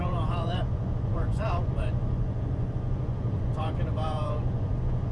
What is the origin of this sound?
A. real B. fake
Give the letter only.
B